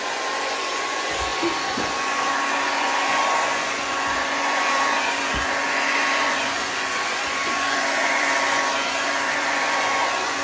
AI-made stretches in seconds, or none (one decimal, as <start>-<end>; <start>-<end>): 0.0-10.4